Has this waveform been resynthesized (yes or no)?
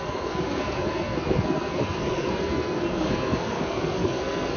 yes